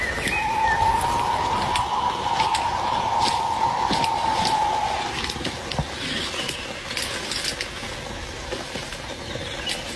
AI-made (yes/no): no